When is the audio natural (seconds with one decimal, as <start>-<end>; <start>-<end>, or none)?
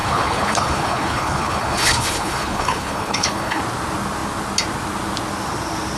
3.6-6.0